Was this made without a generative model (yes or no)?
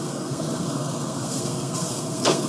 no